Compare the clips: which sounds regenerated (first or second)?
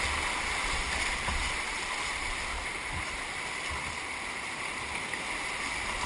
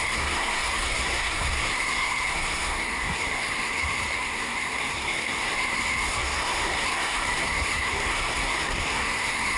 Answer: second